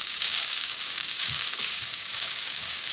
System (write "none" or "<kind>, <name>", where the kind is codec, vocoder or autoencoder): codec, DAC